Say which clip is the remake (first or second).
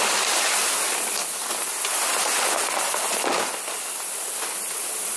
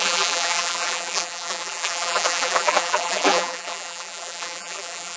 second